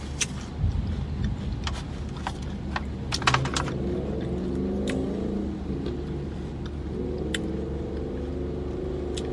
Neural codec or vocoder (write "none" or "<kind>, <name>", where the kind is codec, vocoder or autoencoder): none